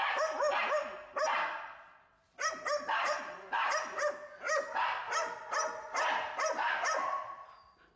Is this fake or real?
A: real